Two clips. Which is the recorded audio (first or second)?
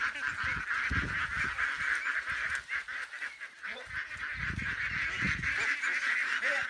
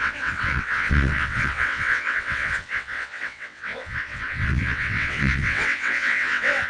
first